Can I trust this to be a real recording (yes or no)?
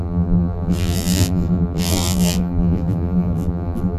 no